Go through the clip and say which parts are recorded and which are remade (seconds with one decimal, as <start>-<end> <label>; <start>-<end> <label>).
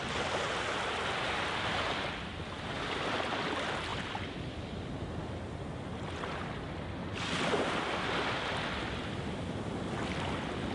0.0-10.7 recorded